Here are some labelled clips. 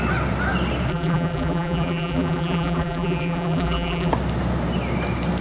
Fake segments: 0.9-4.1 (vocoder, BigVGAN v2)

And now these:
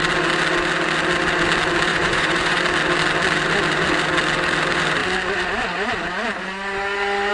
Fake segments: 1.9-2.6 (vocoder, Vocos)